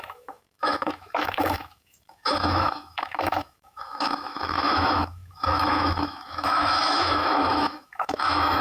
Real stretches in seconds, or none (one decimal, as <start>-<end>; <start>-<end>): none